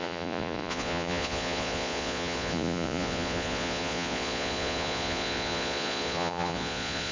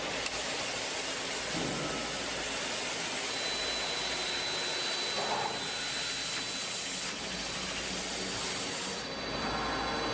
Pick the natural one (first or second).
second